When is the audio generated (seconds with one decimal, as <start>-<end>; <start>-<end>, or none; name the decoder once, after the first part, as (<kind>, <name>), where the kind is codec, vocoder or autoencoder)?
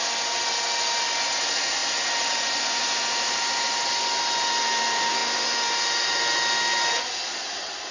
none